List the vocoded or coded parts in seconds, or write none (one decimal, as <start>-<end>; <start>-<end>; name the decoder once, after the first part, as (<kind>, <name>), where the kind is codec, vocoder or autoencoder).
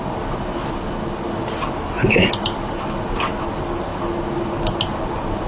none